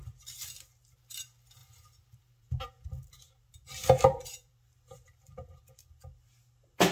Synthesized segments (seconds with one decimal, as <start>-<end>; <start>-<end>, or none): 1.6-5.7